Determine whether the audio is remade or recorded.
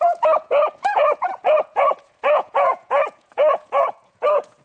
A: remade